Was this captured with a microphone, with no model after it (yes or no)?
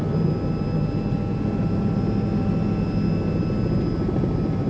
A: yes